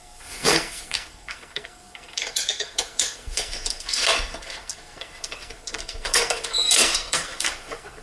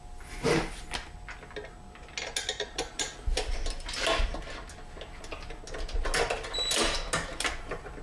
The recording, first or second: second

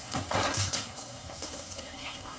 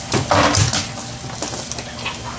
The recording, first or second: second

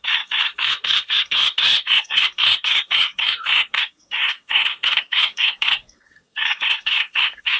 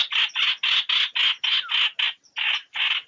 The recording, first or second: second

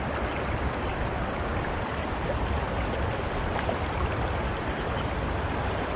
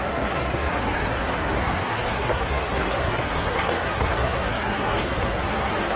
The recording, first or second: first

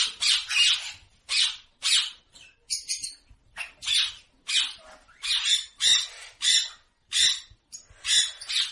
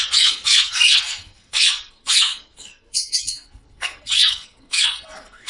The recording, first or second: first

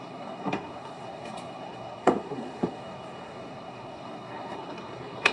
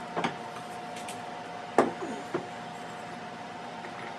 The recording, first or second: second